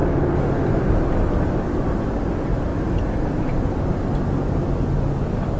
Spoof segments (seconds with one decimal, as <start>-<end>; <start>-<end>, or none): none

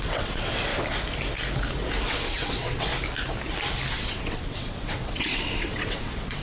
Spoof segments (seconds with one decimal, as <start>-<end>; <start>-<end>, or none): 0.0-0.7; 2.1-2.9; 3.9-6.4

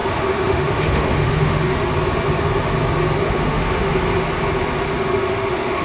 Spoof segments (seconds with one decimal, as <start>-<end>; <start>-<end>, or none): 0.0-1.7; 3.2-3.9; 5.2-5.8

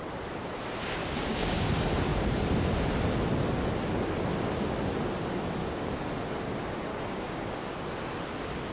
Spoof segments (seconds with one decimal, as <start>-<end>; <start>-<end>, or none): 1.0-1.7; 5.6-6.1; 6.9-7.6

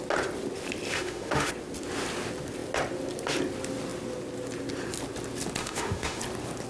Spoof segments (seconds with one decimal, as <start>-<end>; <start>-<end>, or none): 0.9-1.5; 5.6-6.2

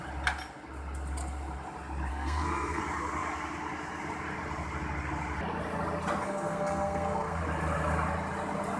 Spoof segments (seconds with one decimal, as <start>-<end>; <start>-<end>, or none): 2.1-2.8; 6.2-7.4

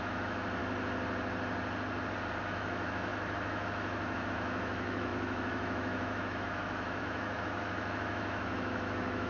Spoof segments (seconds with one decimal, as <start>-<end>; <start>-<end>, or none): 0.0-0.6; 2.4-9.3

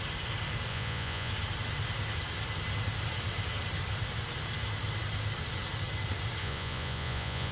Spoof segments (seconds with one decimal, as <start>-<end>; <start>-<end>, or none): 0.7-1.3; 6.4-7.5